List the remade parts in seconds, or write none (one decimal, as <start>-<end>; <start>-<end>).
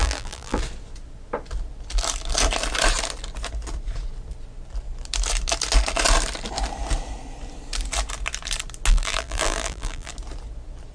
0.0-0.6; 8.9-10.1